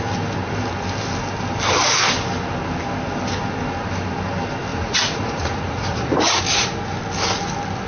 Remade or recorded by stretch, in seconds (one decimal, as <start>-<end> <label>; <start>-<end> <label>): 0.0-4.7 recorded; 4.7-6.4 remade; 6.4-7.9 recorded

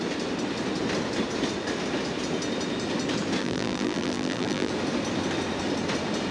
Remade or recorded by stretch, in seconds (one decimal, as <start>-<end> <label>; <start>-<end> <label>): 0.0-3.4 recorded; 3.4-4.7 remade; 4.7-6.3 recorded

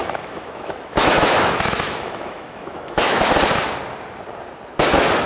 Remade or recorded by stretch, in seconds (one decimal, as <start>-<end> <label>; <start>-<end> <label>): 0.0-3.2 remade; 3.2-5.3 recorded

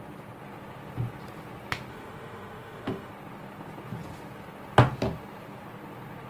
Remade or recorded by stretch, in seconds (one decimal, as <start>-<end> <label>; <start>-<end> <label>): 0.0-1.9 recorded; 1.9-3.1 remade; 3.1-6.3 recorded